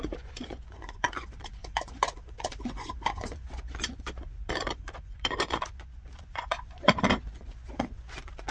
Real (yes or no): no